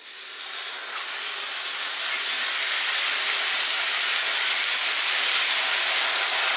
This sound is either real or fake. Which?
fake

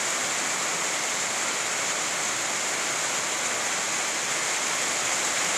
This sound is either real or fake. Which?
real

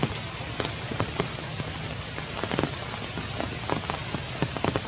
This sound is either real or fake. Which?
real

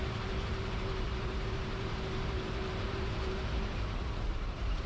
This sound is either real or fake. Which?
fake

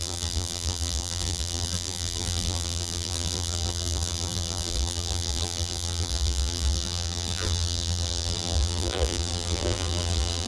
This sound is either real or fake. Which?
fake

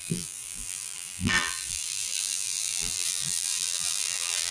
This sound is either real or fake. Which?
fake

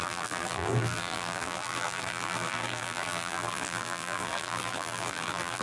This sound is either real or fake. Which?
fake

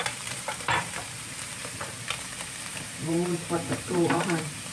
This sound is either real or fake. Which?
fake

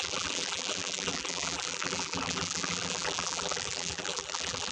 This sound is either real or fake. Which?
fake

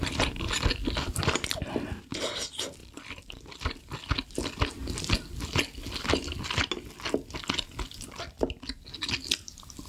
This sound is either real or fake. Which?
real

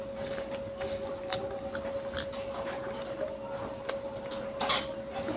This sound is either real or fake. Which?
real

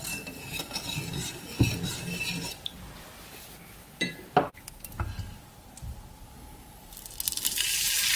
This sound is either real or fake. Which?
real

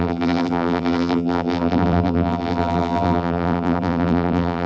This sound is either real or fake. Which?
fake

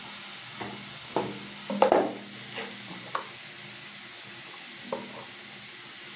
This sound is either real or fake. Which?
real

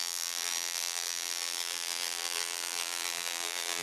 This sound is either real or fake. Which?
fake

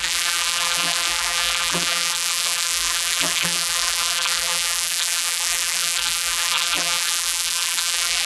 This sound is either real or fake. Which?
fake